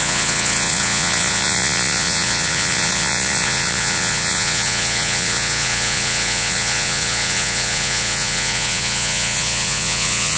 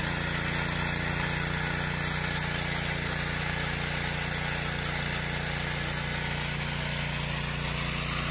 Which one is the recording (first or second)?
second